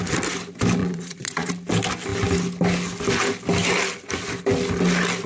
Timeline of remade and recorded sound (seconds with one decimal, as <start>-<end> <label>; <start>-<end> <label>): 0.0-0.8 recorded; 0.8-1.5 remade; 1.5-5.3 recorded